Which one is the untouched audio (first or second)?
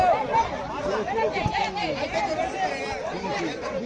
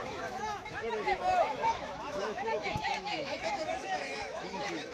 first